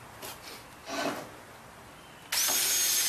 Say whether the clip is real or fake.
real